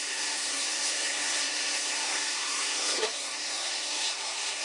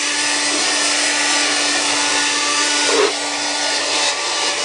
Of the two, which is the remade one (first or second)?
first